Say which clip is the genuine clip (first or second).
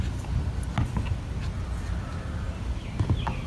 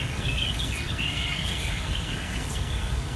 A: first